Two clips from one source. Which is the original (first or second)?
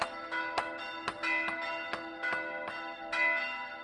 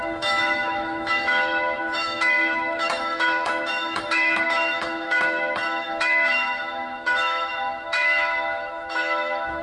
first